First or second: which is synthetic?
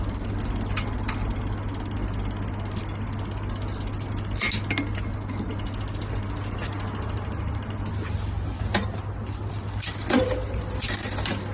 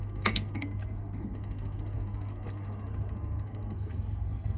second